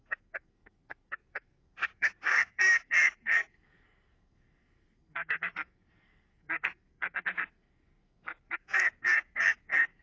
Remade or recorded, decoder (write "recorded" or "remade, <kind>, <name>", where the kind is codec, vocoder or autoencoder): remade, codec, SNAC